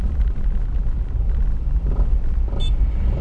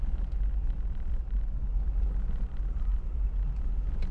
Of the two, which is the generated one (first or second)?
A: first